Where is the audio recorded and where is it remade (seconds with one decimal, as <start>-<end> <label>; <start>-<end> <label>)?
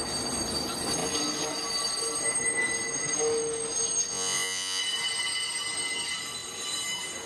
0.0-4.1 recorded; 4.1-4.8 remade; 4.8-7.3 recorded